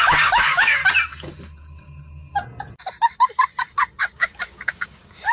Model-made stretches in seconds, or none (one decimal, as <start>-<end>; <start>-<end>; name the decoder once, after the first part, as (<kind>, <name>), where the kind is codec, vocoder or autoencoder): 0.0-0.8 (codec, DAC); 4.0-5.3